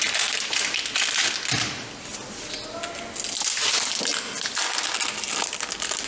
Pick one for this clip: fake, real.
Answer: real